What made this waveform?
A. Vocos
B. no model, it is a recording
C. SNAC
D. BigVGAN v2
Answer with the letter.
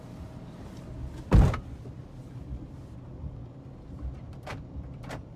B